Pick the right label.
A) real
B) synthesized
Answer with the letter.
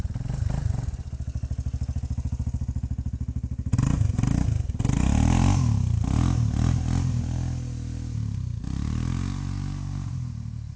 A